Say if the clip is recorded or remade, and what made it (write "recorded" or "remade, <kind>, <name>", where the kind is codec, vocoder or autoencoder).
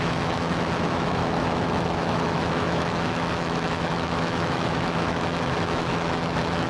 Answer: remade, autoencoder, DAC-VAE